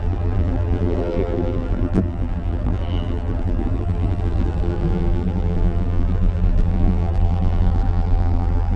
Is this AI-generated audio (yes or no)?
yes